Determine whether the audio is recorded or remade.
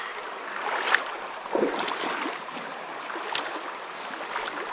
recorded